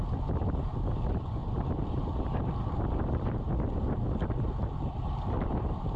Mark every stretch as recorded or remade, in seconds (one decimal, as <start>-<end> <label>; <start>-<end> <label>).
0.0-6.0 recorded